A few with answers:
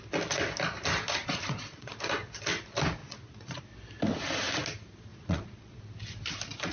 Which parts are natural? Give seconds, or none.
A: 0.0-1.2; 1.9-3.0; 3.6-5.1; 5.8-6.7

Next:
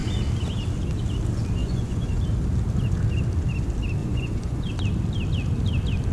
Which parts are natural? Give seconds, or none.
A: 0.0-1.6; 2.2-4.0; 4.7-6.1